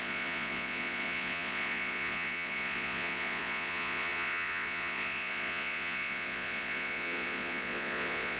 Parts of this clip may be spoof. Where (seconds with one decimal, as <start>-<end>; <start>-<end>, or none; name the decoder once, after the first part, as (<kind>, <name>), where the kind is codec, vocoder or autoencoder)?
0.0-8.4 (vocoder, Vocos)

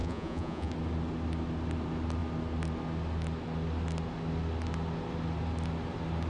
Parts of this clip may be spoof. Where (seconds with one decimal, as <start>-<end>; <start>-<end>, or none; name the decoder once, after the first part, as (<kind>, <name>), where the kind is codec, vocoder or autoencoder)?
0.0-0.7 (vocoder, Vocos)

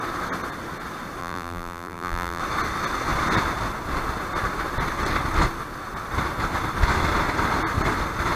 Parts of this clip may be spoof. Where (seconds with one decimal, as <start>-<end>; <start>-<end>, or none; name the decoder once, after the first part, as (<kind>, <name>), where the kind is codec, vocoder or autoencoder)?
1.2-2.4 (vocoder, BigVGAN v2)

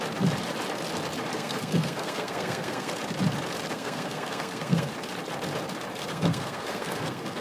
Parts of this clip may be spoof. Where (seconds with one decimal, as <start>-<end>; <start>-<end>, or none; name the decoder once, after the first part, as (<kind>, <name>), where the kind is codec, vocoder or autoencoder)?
1.3-2.9 (codec, SNAC); 3.7-4.9; 6.0-7.4

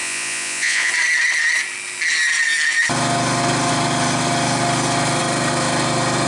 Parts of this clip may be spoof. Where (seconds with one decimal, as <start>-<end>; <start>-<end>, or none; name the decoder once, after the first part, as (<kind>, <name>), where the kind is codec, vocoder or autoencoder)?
0.0-0.9 (vocoder, Vocos)